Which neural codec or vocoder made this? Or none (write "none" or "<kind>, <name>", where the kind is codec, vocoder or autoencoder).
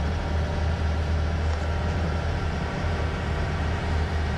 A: none